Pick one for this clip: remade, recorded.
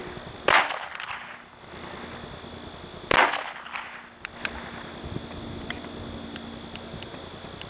recorded